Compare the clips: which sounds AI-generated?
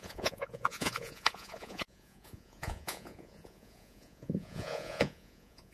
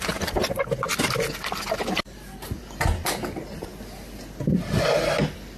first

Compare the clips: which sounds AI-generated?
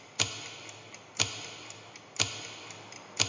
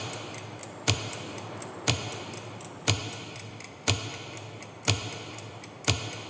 second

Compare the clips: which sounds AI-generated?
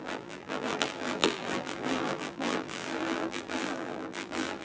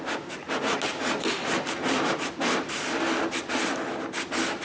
first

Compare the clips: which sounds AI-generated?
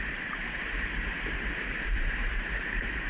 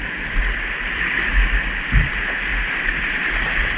first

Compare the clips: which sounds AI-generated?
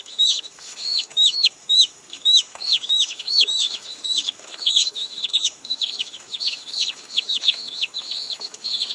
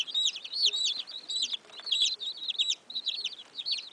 first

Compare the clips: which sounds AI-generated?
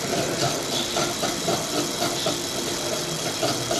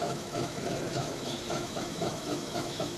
second